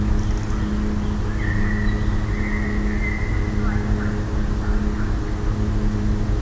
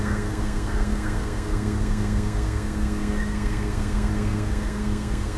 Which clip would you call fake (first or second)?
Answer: second